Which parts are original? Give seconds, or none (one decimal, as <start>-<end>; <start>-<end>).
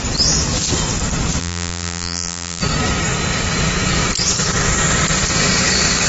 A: 0.0-1.4; 2.6-6.1